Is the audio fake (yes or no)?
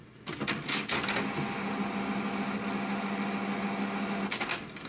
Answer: no